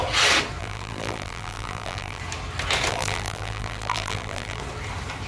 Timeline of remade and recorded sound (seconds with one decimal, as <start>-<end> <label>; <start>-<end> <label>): 0.0-0.6 recorded; 0.6-2.2 remade; 2.2-2.9 recorded; 2.9-4.6 remade; 4.6-5.3 recorded

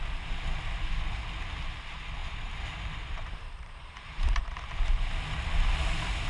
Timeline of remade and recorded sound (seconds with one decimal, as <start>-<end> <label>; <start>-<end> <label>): 0.0-2.2 recorded; 2.2-4.4 remade; 4.4-6.3 recorded

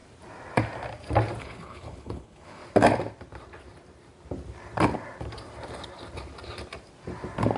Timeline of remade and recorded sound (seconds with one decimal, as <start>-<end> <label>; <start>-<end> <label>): 0.0-1.4 recorded; 1.4-2.6 remade; 2.6-7.6 recorded

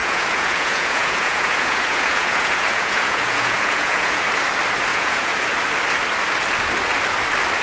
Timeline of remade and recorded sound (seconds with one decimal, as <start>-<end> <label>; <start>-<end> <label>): 0.0-4.2 remade; 4.2-4.9 recorded; 4.9-5.5 remade; 5.5-7.6 recorded

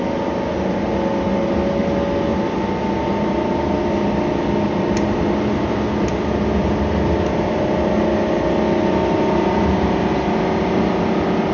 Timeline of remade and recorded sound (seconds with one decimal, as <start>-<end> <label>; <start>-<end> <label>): 0.0-2.3 recorded; 2.3-3.6 remade; 3.6-11.5 recorded

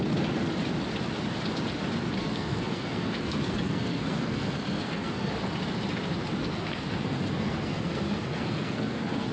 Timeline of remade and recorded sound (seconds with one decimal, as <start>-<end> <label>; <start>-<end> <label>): 0.0-2.2 recorded; 2.2-5.3 remade; 5.3-6.4 recorded; 6.4-9.3 remade